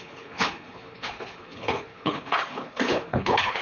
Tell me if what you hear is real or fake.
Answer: fake